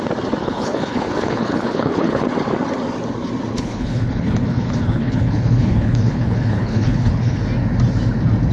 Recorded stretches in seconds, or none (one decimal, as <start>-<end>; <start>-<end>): 0.0-0.4; 2.2-3.5; 7.4-8.5